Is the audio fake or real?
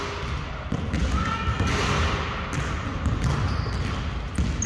real